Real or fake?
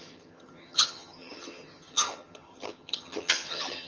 fake